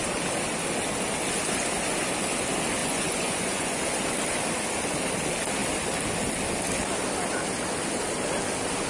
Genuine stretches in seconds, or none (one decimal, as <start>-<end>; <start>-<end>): 0.0-2.8; 3.8-8.9